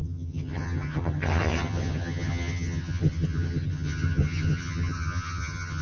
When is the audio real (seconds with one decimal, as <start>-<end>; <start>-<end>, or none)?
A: none